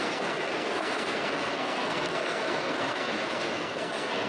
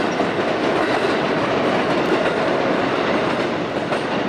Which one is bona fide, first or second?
second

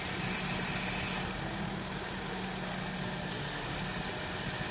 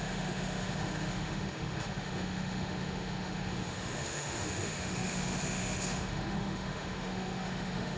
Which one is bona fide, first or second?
first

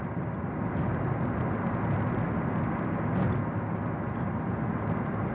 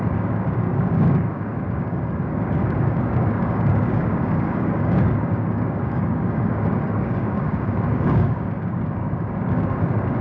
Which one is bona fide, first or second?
first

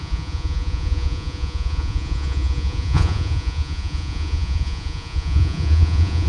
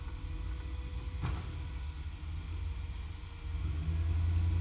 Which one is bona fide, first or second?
second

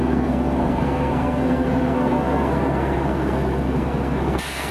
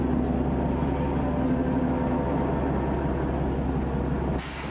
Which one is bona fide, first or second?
second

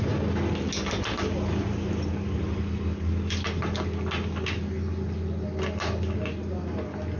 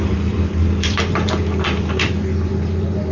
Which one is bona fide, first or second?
first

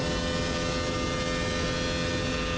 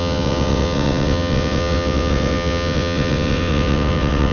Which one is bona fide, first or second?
first